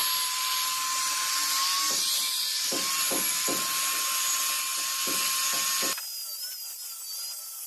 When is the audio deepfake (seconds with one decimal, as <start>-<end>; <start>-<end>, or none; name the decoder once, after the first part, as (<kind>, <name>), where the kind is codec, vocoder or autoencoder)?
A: none